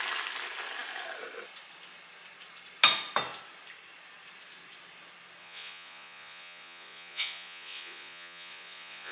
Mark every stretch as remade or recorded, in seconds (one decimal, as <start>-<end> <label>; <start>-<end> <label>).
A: 0.0-5.4 recorded; 5.4-9.1 remade